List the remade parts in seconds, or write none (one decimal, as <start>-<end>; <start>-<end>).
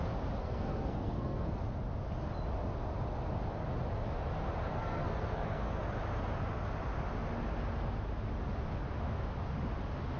0.4-1.6; 4.7-5.8